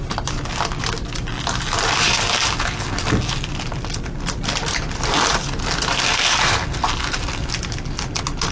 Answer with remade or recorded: recorded